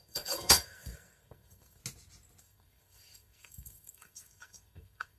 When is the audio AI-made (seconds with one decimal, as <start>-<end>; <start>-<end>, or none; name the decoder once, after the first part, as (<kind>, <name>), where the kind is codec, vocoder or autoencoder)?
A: 0.0-1.8 (codec, SNAC); 2.4-5.2